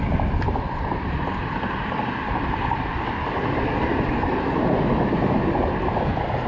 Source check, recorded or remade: recorded